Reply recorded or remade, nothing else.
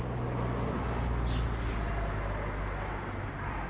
recorded